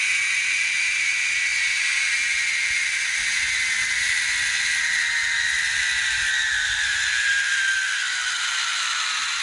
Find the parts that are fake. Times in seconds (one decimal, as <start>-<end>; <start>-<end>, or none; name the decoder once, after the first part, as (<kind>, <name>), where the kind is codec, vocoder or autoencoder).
none